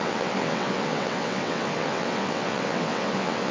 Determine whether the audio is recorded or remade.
remade